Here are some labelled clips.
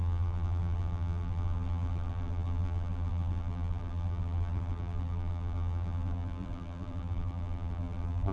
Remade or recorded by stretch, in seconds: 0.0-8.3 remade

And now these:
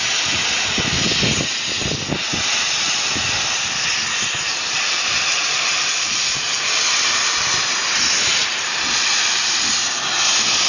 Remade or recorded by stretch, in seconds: 0.0-4.5 recorded; 4.5-6.8 remade; 6.8-8.3 recorded; 8.3-9.6 remade; 9.6-10.7 recorded

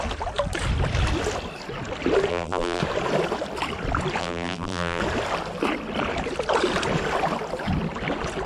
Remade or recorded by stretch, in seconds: 0.0-2.3 recorded; 2.3-2.8 remade; 2.8-4.2 recorded; 4.2-5.0 remade; 5.0-8.5 recorded

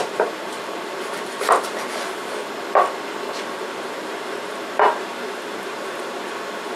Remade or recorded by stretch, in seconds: 0.0-2.4 remade; 2.4-3.4 recorded; 3.4-6.8 remade

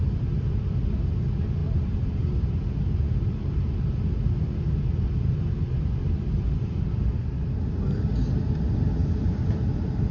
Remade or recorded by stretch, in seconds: 0.0-1.6 recorded; 1.6-3.9 remade; 3.9-9.0 recorded; 9.0-10.1 remade

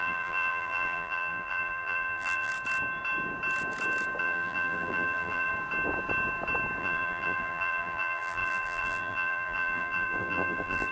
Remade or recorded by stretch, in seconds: 0.0-2.5 remade; 2.5-4.2 recorded; 4.2-5.5 remade; 5.5-6.8 recorded; 6.8-10.9 remade

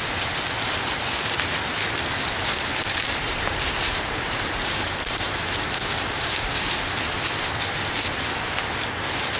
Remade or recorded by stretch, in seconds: 0.0-2.7 recorded; 2.7-6.8 remade; 6.8-9.4 recorded

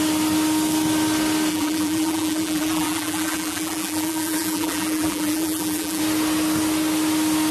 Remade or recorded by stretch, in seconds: 0.0-1.5 recorded; 1.5-6.0 remade; 6.0-7.5 recorded